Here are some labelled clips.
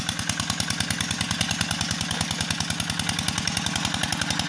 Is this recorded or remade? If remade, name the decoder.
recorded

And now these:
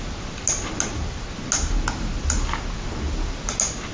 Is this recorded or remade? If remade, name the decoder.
recorded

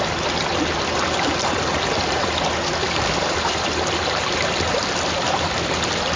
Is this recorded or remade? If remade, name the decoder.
recorded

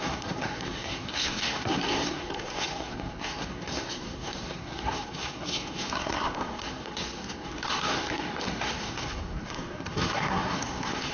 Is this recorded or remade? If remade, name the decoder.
remade, codec, SNAC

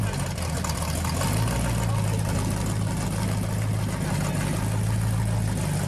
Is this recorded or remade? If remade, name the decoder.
recorded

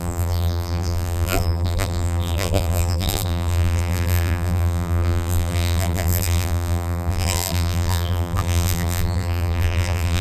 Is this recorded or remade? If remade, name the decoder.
remade, vocoder, BigVGAN v2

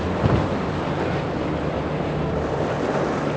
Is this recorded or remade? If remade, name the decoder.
recorded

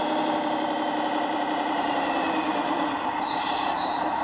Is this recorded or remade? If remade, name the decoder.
remade, vocoder, BigVGAN v2